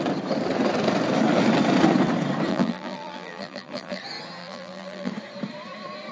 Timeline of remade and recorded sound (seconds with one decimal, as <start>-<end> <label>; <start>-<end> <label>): 0.0-2.5 recorded; 2.5-4.0 remade; 4.0-4.4 recorded; 4.4-5.1 remade; 5.1-6.1 recorded